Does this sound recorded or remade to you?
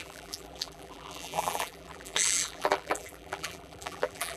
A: remade